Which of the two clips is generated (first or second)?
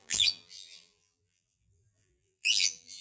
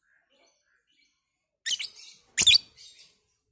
first